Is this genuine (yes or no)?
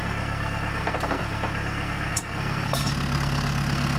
no